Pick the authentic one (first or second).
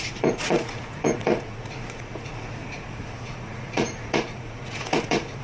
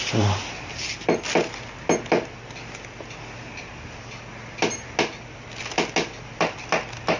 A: second